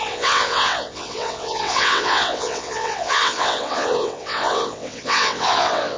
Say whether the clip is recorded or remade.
remade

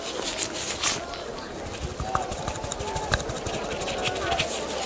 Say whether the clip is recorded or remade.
recorded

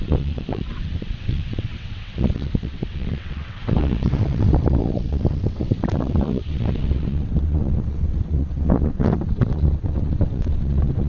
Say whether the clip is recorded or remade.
remade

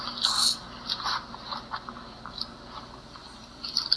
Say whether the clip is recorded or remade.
recorded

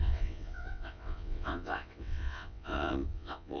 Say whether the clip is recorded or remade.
remade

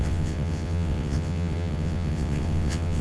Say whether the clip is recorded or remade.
remade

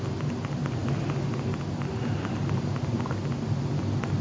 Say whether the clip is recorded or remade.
recorded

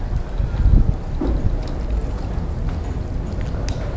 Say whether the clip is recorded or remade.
recorded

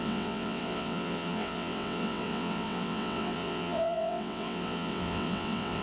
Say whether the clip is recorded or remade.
remade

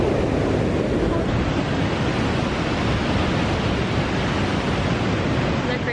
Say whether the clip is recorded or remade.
recorded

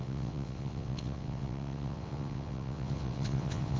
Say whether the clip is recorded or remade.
remade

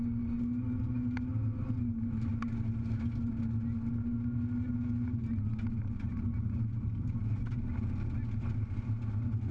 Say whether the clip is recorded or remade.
recorded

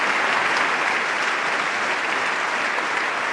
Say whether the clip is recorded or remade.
recorded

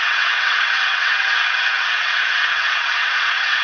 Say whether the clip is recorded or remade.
remade